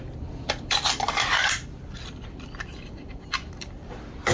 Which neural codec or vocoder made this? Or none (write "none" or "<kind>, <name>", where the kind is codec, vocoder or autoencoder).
vocoder, BigVGAN v2